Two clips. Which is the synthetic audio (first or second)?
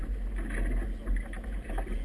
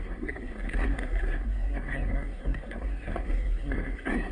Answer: second